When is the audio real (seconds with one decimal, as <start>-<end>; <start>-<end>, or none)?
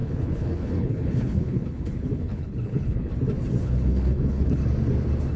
3.1-3.6; 4.6-5.4